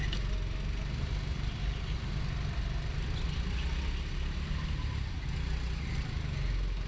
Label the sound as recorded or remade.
recorded